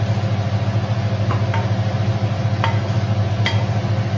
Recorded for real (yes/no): yes